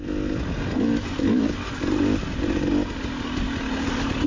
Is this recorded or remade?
recorded